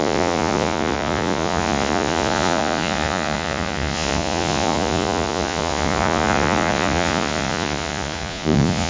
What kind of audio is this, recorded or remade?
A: remade